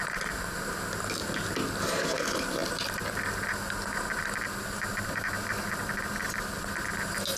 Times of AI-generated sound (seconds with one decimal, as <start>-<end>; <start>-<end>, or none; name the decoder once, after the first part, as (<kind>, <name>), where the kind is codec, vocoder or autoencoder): none

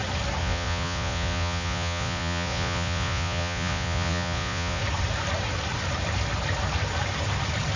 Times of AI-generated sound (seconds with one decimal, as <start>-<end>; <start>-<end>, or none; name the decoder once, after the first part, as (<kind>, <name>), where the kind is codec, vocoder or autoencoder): 0.4-4.8 (vocoder, Vocos)

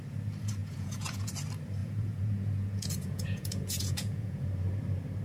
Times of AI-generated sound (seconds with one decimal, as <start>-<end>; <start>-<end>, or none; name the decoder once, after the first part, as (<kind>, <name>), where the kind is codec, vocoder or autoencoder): 0.6-1.3 (vocoder, Vocos); 1.8-4.5

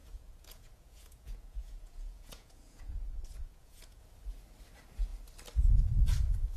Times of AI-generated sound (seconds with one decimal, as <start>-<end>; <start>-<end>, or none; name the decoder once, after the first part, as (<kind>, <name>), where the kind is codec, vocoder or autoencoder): 0.0-4.0 (vocoder, Vocos)

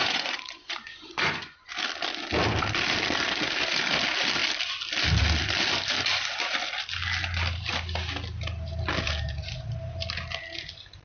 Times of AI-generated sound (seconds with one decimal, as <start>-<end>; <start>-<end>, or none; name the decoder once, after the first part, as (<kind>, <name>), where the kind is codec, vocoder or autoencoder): 0.0-1.7 (vocoder, Vocos)

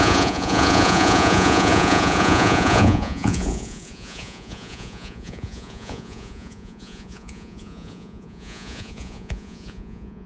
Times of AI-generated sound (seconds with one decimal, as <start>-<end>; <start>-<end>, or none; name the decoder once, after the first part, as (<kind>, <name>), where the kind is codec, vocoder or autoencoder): 0.0-10.3 (vocoder, Vocos)

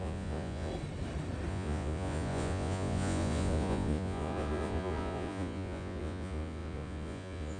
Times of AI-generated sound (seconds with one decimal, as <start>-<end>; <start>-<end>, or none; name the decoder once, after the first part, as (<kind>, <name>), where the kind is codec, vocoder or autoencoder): 0.0-0.7 (vocoder, Vocos); 1.5-7.6